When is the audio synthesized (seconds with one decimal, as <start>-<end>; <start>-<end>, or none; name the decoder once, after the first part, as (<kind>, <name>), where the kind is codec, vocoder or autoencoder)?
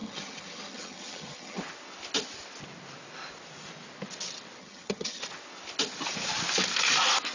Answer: 0.0-1.6 (vocoder, HiFi-GAN); 4.6-5.2